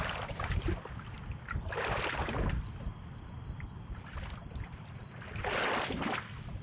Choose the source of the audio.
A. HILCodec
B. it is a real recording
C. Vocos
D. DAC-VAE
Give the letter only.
B